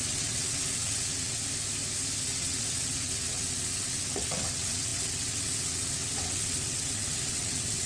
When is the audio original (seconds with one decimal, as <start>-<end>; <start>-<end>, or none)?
1.4-2.2

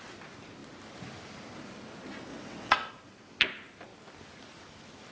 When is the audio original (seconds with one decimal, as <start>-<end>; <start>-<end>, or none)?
0.0-2.3; 2.9-5.1